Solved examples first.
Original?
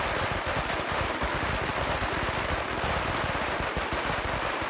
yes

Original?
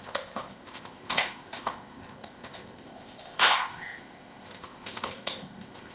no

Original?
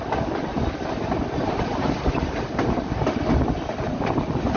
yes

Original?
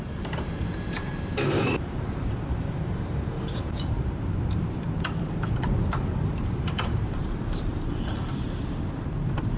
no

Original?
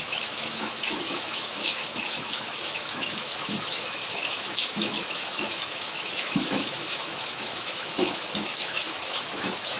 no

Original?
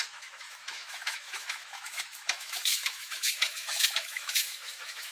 no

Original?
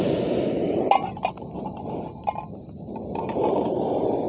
yes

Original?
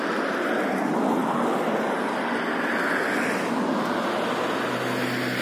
yes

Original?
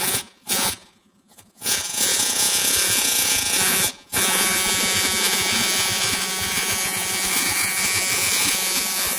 no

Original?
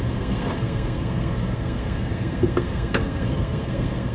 no